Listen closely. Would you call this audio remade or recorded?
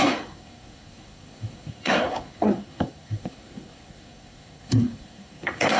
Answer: remade